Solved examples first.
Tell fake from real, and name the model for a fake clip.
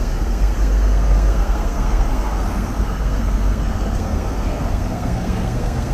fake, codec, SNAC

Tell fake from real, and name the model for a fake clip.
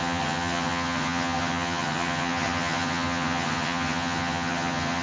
fake, vocoder, HiFi-GAN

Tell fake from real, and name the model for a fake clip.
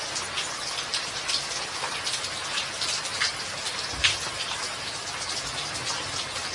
real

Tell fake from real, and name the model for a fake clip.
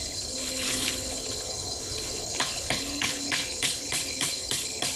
fake, codec, HILCodec